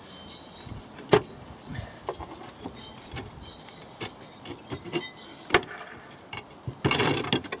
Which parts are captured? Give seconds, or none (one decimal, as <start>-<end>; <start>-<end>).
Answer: 0.0-7.6